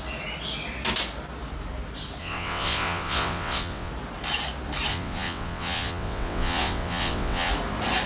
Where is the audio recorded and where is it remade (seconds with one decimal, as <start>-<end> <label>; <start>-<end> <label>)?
0.0-2.2 recorded; 2.2-3.9 remade; 3.9-4.9 recorded; 4.9-7.5 remade; 7.5-8.1 recorded